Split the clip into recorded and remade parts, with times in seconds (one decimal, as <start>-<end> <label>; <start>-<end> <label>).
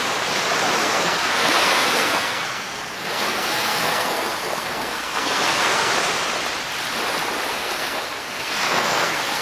0.0-0.8 recorded; 0.8-5.9 remade; 5.9-7.5 recorded; 7.5-9.4 remade